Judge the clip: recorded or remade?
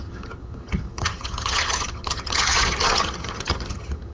remade